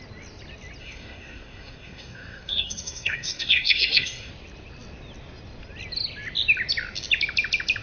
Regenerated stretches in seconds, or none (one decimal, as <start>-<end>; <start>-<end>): 0.8-4.3